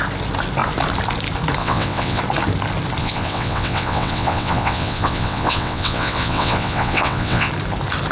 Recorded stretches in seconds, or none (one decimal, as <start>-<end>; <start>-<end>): 0.0-1.6; 2.2-3.0; 7.5-8.1